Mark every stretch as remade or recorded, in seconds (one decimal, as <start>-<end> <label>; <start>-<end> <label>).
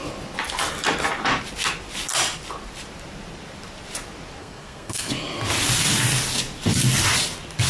0.0-4.4 recorded; 4.4-5.1 remade; 5.1-7.7 recorded